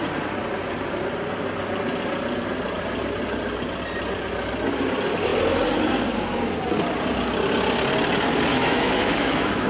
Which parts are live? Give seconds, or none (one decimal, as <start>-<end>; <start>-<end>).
0.0-8.5